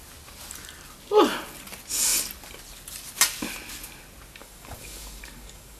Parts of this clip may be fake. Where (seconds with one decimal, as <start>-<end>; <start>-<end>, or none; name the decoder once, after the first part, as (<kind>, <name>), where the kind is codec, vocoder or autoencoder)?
4.4-5.8 (codec, DAC)